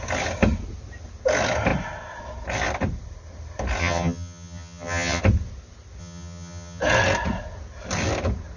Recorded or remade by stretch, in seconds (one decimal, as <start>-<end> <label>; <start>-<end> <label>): 0.0-3.8 recorded; 3.8-5.2 remade; 5.2-6.0 recorded; 6.0-6.8 remade; 6.8-8.6 recorded